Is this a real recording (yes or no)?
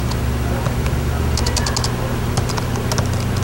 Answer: yes